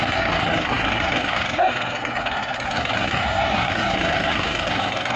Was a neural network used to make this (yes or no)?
yes